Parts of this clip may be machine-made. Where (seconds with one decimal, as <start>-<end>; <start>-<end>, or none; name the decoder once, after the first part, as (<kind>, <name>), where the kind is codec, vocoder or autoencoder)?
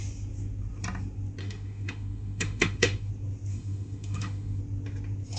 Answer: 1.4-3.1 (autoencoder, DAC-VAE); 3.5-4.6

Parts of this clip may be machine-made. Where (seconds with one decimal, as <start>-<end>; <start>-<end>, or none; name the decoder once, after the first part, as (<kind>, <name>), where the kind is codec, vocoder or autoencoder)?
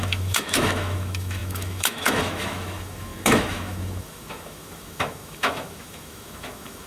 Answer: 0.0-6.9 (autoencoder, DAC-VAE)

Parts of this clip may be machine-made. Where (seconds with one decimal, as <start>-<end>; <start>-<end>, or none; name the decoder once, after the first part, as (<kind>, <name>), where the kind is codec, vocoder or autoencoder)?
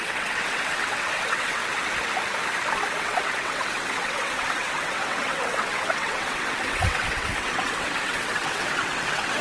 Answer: 0.0-1.6 (vocoder, WaveNeXt); 3.0-9.4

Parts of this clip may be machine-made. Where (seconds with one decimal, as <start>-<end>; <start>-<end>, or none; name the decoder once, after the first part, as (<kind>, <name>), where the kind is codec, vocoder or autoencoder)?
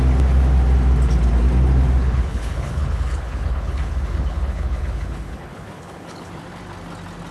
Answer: 2.0-6.3 (codec, HILCodec)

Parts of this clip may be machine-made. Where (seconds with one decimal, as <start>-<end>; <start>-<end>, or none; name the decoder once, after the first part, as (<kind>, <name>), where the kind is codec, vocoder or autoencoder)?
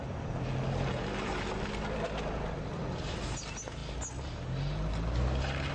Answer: none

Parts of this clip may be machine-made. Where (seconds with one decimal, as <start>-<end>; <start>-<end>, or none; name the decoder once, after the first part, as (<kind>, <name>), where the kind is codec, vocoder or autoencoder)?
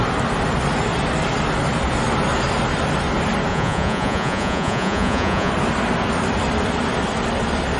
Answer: 3.5-5.5 (vocoder, Vocos)